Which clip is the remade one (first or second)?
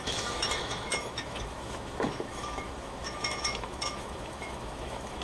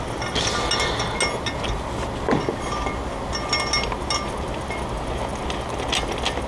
first